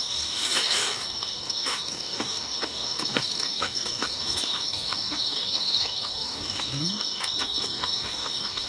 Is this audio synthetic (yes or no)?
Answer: yes